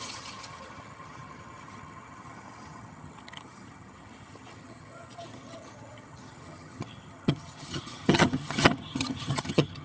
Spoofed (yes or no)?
yes